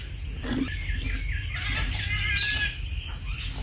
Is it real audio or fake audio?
real